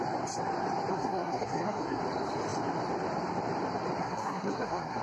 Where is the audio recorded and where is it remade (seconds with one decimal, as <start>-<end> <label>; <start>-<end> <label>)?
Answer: 0.0-0.9 recorded; 0.9-2.0 remade; 2.0-4.0 recorded; 4.0-5.0 remade